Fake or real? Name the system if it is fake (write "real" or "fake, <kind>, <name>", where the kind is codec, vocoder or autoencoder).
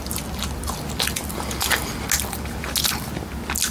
real